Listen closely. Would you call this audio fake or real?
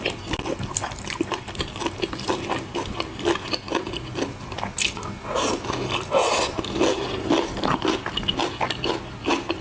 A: real